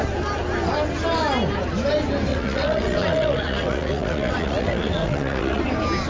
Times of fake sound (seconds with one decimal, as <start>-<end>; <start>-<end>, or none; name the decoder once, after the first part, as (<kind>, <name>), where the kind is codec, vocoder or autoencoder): 2.3-5.6 (vocoder, WaveNeXt)